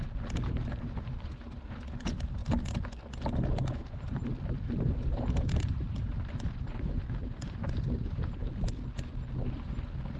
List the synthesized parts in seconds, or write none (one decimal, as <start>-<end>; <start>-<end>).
0.0-2.4; 3.5-8.4